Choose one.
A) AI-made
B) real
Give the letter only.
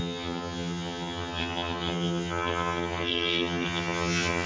A